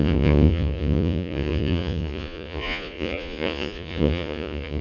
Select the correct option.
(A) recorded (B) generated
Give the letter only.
B